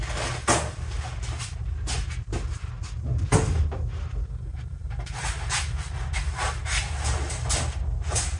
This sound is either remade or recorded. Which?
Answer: recorded